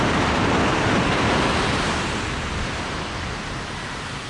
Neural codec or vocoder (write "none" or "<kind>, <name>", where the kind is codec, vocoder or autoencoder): none